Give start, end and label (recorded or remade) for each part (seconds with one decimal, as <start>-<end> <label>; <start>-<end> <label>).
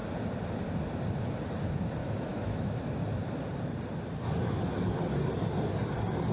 0.0-2.0 recorded; 2.0-2.7 remade; 2.7-6.3 recorded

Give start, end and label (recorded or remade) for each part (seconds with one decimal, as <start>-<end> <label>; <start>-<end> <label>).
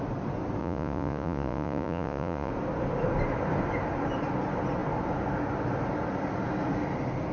0.0-0.6 recorded; 0.6-2.5 remade; 2.5-7.3 recorded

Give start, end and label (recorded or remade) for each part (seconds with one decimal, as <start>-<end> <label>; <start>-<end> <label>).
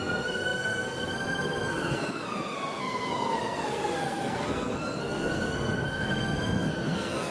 0.0-7.3 remade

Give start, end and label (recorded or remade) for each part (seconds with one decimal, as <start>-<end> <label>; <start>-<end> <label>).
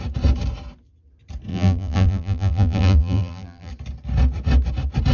0.0-1.5 recorded; 1.5-3.7 remade; 3.7-5.1 recorded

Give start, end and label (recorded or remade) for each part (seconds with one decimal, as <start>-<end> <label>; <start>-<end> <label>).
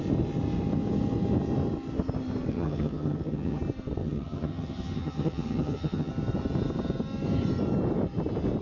0.0-2.5 recorded; 2.5-3.6 remade; 3.6-4.0 recorded; 4.0-6.1 remade; 6.1-8.6 recorded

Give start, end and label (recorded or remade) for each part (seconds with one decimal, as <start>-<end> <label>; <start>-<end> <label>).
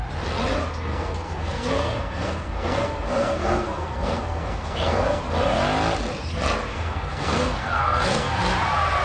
0.0-0.9 recorded; 0.9-5.2 remade; 5.2-6.7 recorded; 6.7-8.4 remade; 8.4-9.0 recorded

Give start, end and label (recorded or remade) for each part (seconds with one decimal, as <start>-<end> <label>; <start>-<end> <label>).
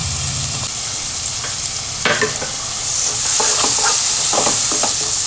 0.0-5.3 remade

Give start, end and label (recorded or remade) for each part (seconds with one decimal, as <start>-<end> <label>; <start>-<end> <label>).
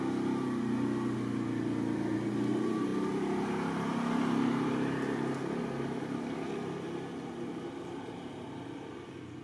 0.0-9.4 recorded